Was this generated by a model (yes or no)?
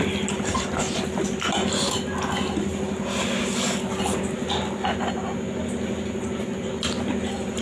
no